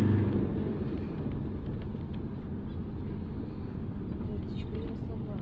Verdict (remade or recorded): recorded